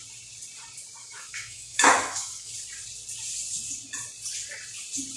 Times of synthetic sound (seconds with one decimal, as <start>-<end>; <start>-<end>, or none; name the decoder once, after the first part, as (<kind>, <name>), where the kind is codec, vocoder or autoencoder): 1.0-2.5 (autoencoder, DAC-VAE)